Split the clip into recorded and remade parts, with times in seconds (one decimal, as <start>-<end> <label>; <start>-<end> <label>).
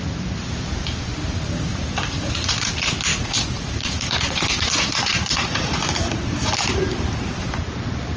0.0-1.7 recorded; 1.7-2.7 remade; 2.7-3.1 recorded; 3.1-5.8 remade; 5.8-8.2 recorded